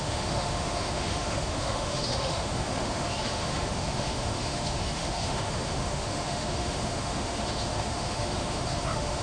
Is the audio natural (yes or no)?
no